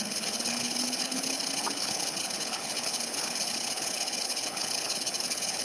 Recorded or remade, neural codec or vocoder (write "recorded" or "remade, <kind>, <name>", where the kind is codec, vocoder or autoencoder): remade, codec, HILCodec